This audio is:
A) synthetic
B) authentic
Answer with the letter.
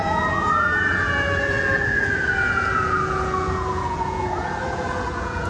A